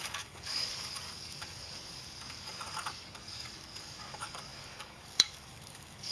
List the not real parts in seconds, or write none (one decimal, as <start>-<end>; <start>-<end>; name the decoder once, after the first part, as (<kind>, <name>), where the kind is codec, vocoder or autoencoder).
0.0-6.1 (codec, DAC)